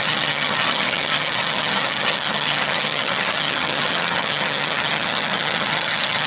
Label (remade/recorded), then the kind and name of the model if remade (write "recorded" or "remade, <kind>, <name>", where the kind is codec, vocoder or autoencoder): remade, vocoder, HiFi-GAN